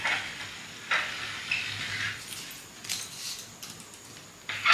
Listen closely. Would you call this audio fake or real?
real